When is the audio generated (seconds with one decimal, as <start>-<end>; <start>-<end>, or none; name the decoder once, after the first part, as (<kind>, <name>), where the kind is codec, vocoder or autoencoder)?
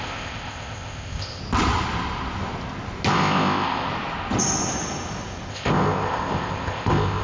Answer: 0.0-1.4 (codec, ZipCodec); 3.1-3.9; 5.5-7.2